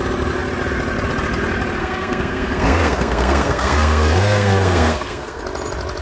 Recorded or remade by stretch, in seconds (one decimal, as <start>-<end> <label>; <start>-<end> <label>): 0.0-1.8 recorded; 1.8-5.4 remade; 5.4-6.0 recorded